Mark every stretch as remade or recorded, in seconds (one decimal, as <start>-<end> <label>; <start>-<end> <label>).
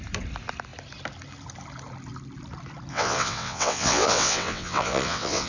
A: 0.0-2.9 recorded; 2.9-5.5 remade